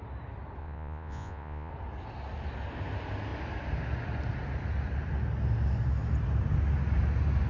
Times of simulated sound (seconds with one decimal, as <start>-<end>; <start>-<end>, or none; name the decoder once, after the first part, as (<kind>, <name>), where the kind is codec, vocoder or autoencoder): 0.6-1.7 (vocoder, Vocos)